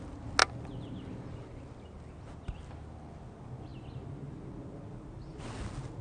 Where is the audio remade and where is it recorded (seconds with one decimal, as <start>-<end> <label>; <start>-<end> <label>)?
0.0-6.0 recorded